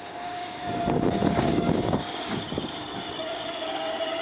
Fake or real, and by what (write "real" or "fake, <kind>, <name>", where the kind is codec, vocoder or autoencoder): fake, codec, DAC